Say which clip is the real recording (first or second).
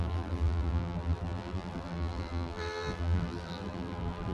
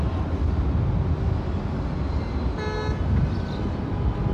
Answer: second